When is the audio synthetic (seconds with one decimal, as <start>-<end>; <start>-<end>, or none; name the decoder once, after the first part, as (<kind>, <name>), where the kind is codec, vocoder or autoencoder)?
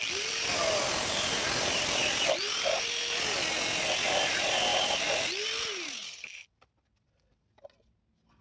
none